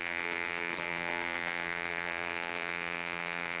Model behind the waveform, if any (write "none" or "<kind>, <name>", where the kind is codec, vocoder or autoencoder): vocoder, BigVGAN v2